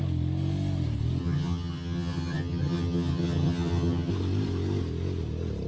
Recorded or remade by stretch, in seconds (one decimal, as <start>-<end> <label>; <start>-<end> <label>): 0.0-1.2 recorded; 1.2-4.1 remade; 4.1-5.7 recorded